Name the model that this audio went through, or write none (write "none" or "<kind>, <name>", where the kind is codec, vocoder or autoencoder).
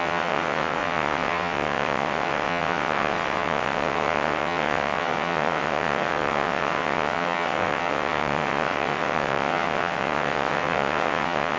vocoder, WaveNeXt